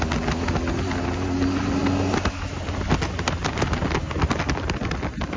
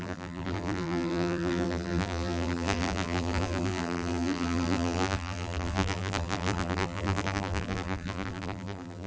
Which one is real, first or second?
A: first